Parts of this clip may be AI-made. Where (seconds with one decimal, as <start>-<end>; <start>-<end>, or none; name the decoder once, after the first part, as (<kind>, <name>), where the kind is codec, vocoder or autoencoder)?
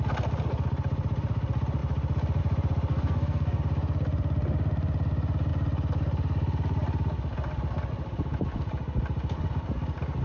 2.9-3.6 (codec, SNAC)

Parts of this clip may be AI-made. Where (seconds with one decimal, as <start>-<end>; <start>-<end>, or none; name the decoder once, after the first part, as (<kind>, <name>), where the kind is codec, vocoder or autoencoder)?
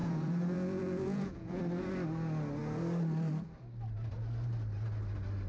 0.0-1.6 (vocoder, Vocos)